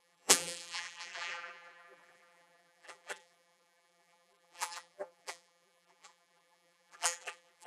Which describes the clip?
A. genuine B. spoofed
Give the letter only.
B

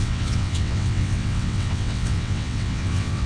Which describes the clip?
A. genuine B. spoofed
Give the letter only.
B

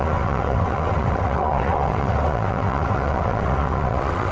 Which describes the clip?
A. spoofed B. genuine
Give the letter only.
A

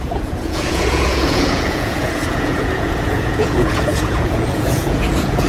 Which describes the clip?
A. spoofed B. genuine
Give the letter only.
A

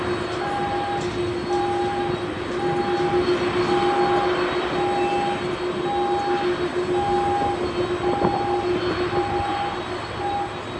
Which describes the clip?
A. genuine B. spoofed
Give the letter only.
A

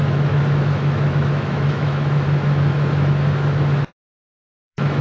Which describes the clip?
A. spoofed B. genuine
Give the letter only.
A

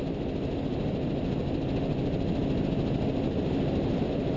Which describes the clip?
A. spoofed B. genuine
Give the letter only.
B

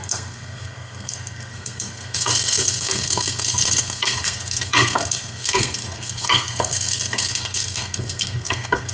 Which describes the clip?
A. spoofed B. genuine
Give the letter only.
A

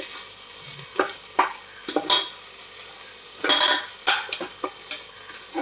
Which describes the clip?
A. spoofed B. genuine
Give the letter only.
B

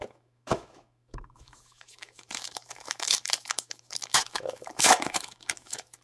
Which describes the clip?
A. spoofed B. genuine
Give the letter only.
A